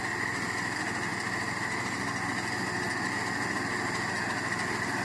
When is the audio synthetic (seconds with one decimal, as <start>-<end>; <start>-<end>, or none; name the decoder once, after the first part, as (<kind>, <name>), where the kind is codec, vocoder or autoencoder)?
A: none